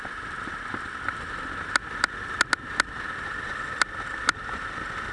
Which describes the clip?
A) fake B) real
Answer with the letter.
B